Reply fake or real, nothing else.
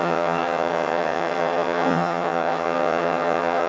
fake